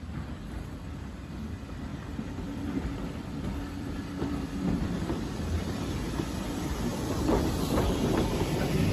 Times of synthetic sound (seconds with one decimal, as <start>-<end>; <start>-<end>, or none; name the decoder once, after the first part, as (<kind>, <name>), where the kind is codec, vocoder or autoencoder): 0.0-1.9 (vocoder, BigVGAN v2); 2.6-8.9